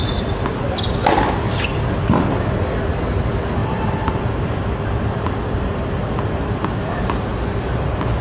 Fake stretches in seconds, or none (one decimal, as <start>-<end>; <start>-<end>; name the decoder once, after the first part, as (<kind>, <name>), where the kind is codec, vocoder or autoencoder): 3.6-6.5 (vocoder, BigVGAN v2)